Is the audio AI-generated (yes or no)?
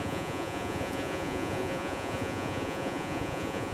yes